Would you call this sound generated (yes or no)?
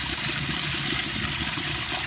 no